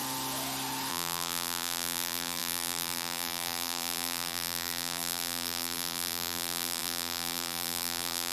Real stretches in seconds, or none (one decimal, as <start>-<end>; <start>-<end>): 0.0-0.9